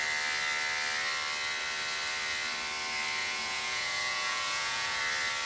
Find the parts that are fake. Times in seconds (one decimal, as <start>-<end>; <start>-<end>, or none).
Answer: 3.2-5.0

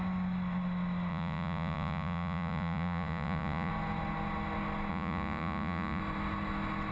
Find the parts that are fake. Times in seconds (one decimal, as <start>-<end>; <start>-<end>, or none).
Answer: 1.1-3.7; 4.9-6.0